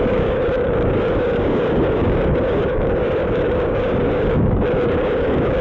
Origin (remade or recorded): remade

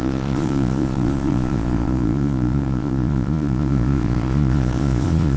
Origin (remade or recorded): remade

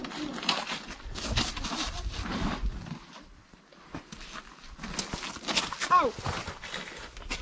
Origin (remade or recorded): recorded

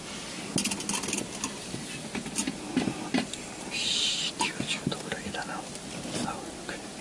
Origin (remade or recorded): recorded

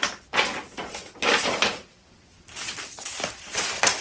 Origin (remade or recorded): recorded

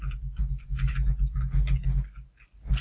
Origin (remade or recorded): recorded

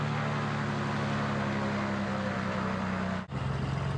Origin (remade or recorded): recorded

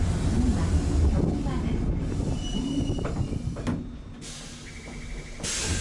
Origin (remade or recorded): recorded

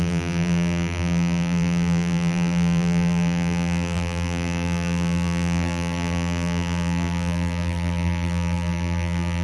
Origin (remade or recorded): remade